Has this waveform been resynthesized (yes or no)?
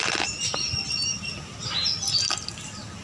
no